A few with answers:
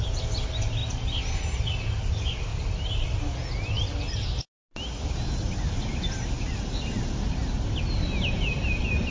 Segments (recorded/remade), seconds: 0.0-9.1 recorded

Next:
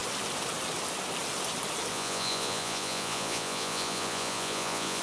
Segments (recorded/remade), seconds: 0.0-1.9 recorded; 1.9-5.0 remade

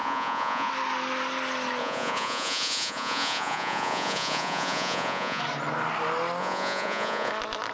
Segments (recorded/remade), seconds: 0.0-0.7 remade; 0.7-1.8 recorded; 1.8-5.4 remade; 5.4-6.4 recorded; 6.4-7.3 remade; 7.3-7.7 recorded

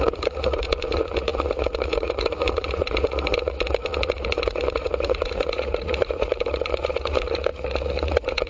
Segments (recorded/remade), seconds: 0.0-8.5 remade

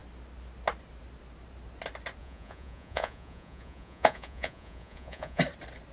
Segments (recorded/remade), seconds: 0.0-2.2 recorded; 2.2-5.4 remade; 5.4-5.9 recorded

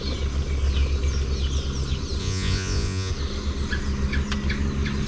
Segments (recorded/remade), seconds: 0.0-2.2 recorded; 2.2-3.1 remade; 3.1-5.1 recorded

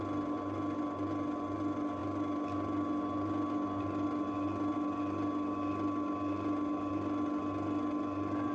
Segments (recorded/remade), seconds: 0.0-8.5 recorded